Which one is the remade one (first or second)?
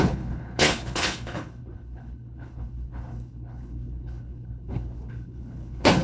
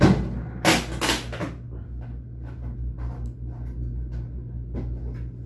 first